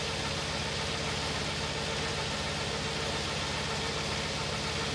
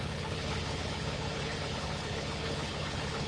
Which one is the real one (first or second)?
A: first